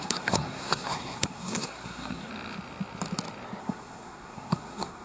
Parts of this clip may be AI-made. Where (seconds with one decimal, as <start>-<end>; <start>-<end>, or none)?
0.0-2.3; 3.6-5.0